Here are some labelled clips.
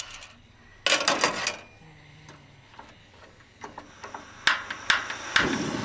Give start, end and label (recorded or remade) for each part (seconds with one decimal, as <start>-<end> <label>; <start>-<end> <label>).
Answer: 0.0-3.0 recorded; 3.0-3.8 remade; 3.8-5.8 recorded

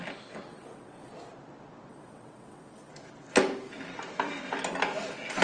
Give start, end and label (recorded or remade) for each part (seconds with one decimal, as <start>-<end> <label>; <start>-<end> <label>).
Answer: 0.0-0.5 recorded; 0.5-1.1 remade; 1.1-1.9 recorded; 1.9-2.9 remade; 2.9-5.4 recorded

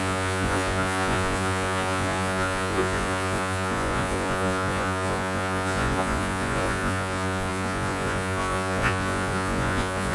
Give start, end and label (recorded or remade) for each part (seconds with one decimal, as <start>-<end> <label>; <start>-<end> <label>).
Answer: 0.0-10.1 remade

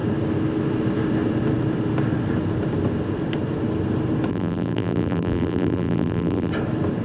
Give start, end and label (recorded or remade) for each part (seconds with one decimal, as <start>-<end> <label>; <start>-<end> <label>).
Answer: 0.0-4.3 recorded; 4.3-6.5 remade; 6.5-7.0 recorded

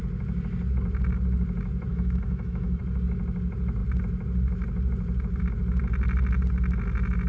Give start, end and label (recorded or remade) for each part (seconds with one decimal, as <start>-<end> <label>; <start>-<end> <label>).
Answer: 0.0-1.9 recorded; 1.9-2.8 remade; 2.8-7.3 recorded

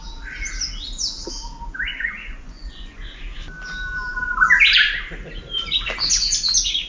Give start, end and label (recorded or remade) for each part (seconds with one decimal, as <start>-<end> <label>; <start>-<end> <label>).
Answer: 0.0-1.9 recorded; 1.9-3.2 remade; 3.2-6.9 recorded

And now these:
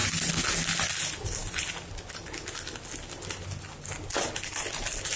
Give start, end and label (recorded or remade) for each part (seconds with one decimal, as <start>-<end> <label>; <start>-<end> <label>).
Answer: 0.0-5.2 recorded

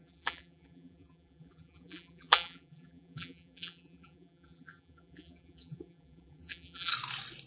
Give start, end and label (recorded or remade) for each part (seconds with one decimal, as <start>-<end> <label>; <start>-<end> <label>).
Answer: 0.0-6.9 remade; 6.9-7.5 recorded